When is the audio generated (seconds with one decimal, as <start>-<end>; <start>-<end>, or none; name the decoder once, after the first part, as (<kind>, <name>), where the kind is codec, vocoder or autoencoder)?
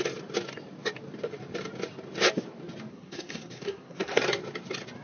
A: 2.9-4.2 (codec, SNAC)